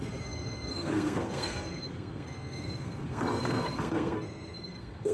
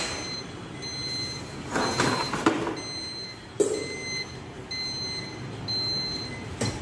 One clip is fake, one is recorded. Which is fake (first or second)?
first